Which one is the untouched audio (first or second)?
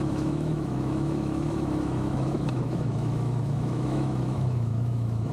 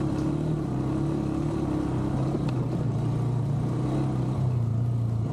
second